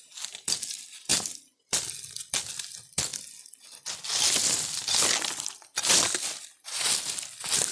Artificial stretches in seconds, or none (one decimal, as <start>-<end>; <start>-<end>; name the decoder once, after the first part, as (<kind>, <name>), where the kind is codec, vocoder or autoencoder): 1.1-1.9 (vocoder, BigVGAN v2)